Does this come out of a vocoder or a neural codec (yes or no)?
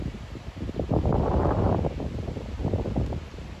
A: no